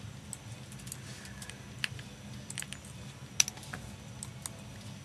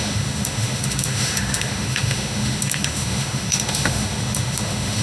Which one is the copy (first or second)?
second